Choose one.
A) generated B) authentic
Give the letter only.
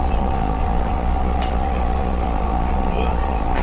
A